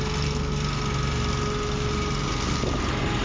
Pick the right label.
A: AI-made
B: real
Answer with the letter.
B